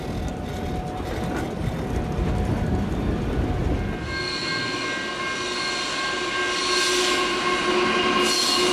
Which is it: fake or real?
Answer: real